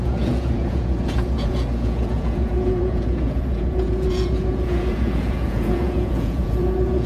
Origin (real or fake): fake